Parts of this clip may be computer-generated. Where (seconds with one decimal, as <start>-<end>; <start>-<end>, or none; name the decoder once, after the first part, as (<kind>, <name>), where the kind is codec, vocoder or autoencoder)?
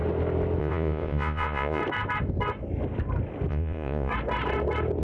0.6-1.8 (vocoder, Vocos); 3.5-4.1